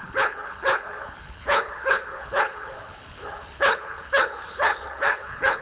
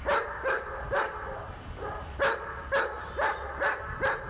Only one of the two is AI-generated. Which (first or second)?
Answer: first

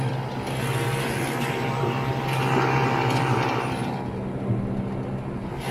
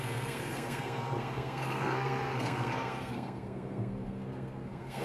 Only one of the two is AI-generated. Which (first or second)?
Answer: second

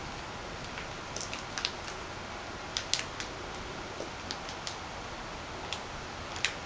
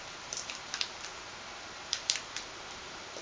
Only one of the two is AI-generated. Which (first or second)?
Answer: second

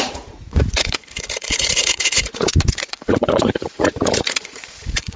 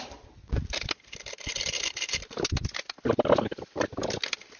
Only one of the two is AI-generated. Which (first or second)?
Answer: first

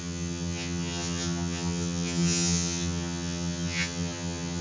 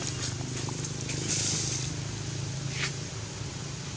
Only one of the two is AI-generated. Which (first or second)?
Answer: first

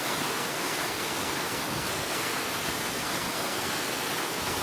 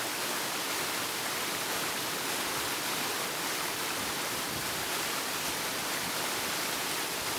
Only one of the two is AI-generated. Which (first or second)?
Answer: first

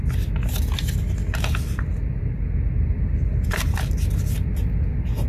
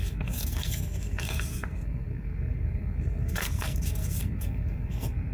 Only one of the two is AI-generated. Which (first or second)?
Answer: second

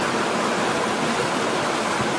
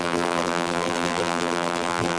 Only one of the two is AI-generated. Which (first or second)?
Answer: second